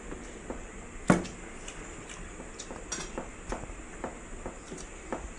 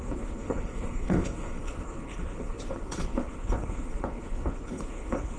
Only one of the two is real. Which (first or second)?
first